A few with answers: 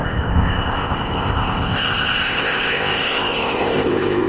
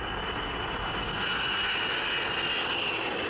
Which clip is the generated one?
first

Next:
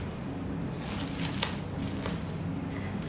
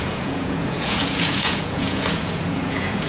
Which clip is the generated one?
second